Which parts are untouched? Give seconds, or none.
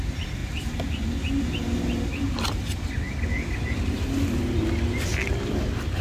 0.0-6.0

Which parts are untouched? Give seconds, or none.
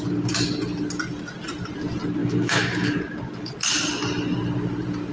0.0-2.2; 3.0-5.1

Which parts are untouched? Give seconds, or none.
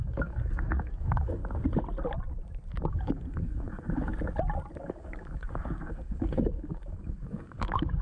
1.4-2.9; 4.1-4.8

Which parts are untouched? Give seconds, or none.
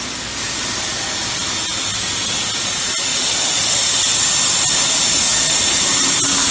0.0-3.1; 4.0-6.5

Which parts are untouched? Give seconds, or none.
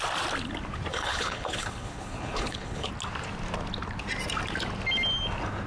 0.0-0.9; 2.9-5.7